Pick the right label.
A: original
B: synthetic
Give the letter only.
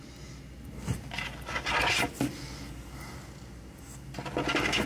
A